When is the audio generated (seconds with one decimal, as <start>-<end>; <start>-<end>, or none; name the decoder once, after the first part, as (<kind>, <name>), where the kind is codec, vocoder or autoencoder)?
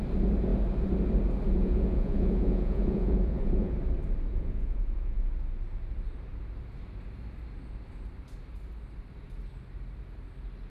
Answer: 1.6-3.7 (vocoder, Vocos); 4.3-5.2